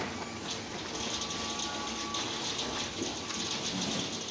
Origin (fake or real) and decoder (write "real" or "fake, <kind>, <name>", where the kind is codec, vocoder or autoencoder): real